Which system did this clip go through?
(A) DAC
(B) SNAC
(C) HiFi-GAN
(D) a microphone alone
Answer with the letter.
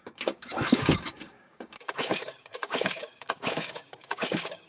A